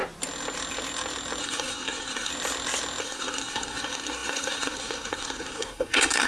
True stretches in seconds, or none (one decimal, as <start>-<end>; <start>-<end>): 0.0-1.4; 2.3-3.0